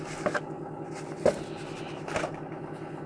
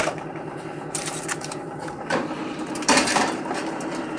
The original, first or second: first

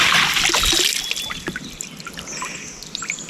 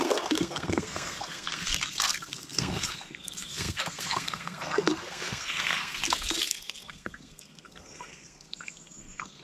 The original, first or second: first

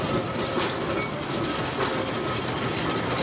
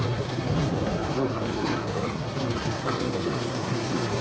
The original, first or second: first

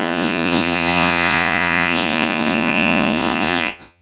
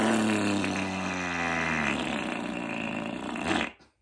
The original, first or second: second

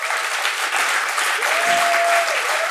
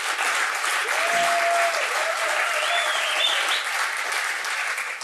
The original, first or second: second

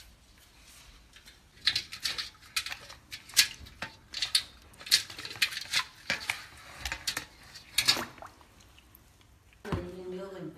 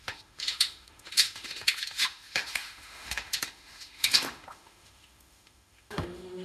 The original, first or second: first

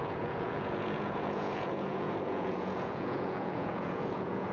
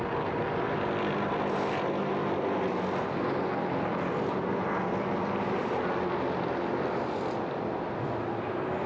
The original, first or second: second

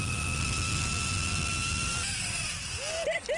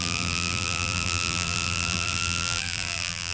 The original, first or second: first